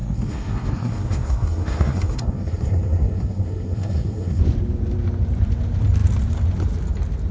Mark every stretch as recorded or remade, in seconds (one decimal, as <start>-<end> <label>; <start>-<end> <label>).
0.0-4.4 remade; 4.4-7.3 recorded